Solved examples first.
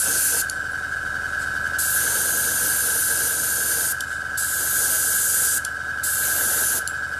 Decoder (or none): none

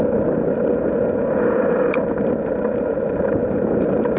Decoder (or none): none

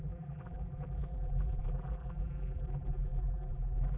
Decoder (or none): vocoder, BigVGAN v2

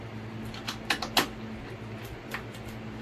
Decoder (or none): none